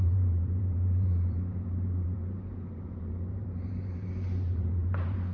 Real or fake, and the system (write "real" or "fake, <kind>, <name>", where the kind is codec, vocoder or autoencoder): fake, vocoder, BigVGAN v2